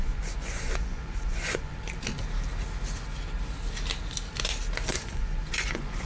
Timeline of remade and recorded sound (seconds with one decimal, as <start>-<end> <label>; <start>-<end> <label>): 0.0-1.7 remade; 1.7-4.9 recorded; 4.9-6.1 remade